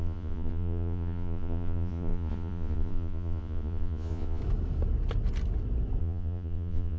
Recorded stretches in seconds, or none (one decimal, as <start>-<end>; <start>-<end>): 4.4-6.0